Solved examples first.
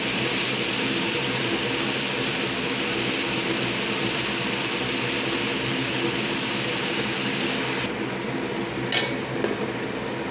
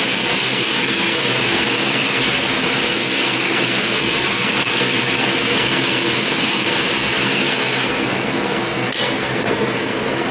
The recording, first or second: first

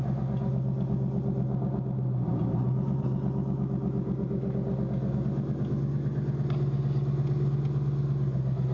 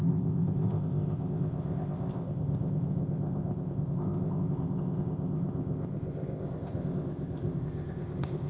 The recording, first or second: first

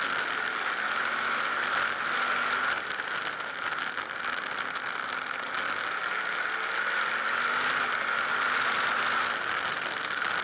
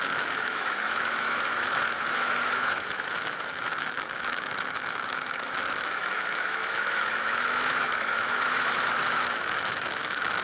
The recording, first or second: first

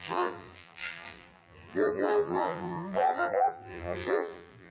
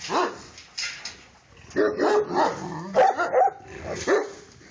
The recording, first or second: second